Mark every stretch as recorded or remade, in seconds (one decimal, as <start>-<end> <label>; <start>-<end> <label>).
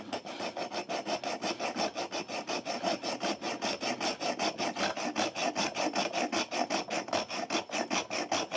0.0-8.6 recorded